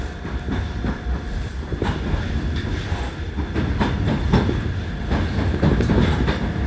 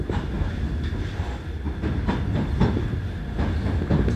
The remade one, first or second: first